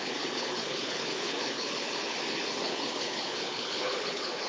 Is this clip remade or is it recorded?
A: remade